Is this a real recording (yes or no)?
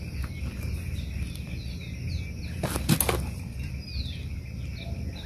yes